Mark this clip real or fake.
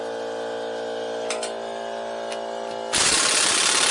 real